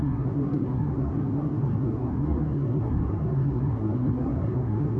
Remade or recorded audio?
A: remade